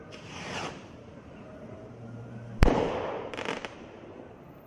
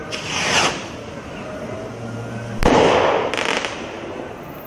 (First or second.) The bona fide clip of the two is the second